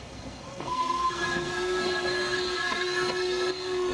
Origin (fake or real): fake